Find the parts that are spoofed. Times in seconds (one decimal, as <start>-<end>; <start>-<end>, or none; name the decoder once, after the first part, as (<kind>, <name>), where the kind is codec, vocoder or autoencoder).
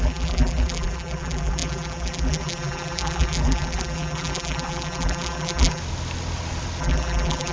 0.0-5.8 (vocoder, BigVGAN v2); 6.8-7.5